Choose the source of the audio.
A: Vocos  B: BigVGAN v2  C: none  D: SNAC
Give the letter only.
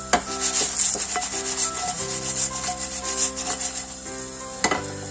C